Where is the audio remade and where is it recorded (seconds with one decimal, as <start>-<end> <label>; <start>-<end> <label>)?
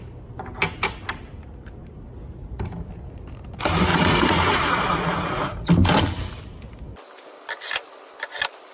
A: 0.0-3.9 recorded; 3.9-5.7 remade; 5.7-8.7 recorded